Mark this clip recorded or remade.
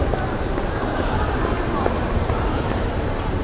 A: remade